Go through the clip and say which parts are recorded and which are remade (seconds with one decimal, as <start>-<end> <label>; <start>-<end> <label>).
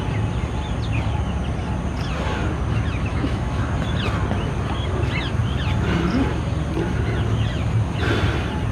0.0-3.1 recorded; 3.1-3.7 remade; 3.7-8.7 recorded